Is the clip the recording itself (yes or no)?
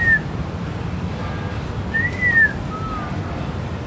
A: yes